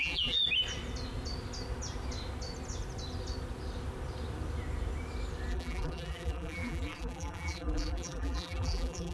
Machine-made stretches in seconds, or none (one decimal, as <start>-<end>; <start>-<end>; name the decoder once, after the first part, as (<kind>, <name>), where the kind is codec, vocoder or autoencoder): 0.0-0.4 (vocoder, BigVGAN v2); 5.5-9.1